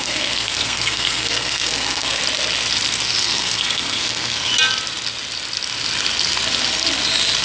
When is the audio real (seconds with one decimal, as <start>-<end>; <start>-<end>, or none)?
2.2-3.2; 4.5-7.4